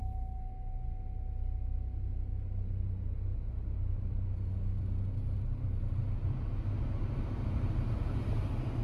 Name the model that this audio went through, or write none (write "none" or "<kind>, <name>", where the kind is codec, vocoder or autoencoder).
none